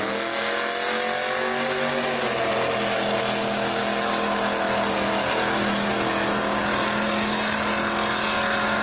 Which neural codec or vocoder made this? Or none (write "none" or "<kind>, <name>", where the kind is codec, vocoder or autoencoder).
none